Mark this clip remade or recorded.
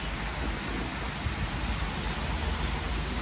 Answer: recorded